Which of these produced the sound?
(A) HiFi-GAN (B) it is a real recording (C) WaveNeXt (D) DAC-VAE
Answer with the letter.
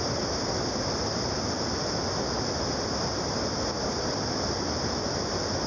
B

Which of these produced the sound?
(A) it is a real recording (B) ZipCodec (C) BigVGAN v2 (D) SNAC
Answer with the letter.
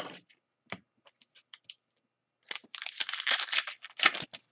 A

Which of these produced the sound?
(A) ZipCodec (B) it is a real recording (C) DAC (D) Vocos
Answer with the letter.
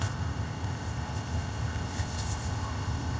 A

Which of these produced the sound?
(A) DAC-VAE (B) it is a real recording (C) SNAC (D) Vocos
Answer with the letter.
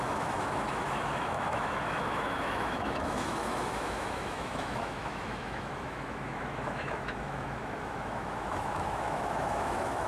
A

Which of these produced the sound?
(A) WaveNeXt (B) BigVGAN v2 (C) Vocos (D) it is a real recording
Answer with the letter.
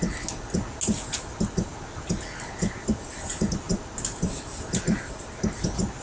D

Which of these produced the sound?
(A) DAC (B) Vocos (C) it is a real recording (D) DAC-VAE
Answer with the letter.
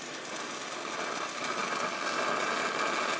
C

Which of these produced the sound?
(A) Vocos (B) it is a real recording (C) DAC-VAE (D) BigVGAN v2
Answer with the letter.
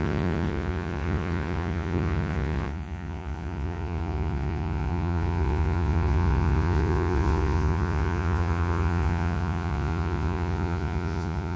A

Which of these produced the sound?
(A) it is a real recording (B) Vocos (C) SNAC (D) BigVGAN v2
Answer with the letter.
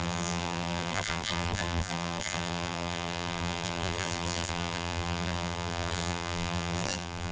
D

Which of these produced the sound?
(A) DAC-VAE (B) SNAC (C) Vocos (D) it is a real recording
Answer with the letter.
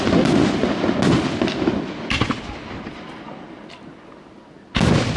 D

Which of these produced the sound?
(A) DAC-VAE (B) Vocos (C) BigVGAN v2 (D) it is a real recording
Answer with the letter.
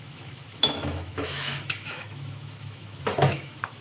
A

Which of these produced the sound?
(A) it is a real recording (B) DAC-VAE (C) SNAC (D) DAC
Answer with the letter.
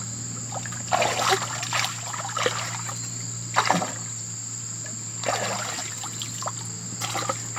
A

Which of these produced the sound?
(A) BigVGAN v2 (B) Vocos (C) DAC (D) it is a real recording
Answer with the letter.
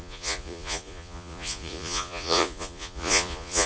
B